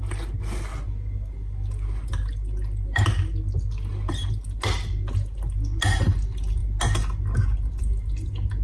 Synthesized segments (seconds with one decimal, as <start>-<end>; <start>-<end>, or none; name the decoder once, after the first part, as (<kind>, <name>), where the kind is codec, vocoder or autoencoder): none